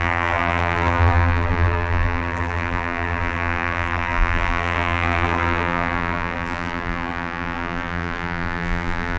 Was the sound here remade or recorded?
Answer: remade